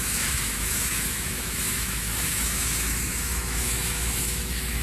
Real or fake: fake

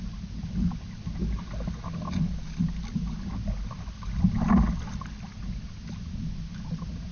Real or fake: real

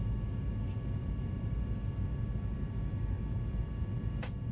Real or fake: real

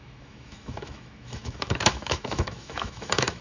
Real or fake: fake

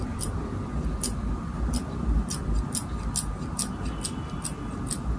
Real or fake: real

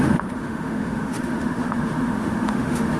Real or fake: fake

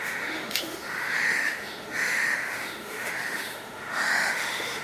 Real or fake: fake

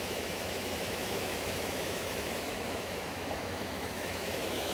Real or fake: fake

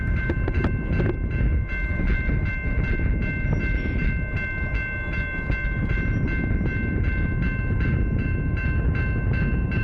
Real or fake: real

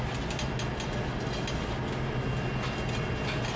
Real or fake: real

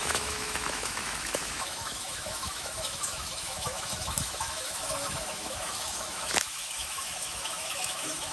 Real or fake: fake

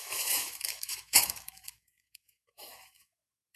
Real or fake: fake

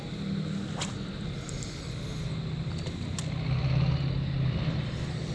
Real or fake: real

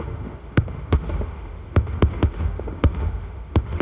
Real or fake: fake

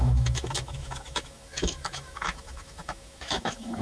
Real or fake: fake